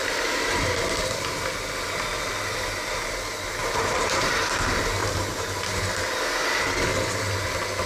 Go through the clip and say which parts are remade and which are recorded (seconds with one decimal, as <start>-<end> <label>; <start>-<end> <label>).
0.0-3.6 recorded; 3.6-4.4 remade; 4.4-5.0 recorded; 5.0-5.9 remade; 5.9-7.9 recorded